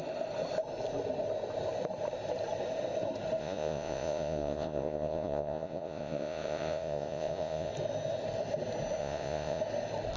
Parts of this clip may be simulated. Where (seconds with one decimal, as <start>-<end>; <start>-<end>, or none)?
3.4-7.7; 9.0-9.6